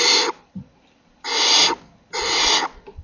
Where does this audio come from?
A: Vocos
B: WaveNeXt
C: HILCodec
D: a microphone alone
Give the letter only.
D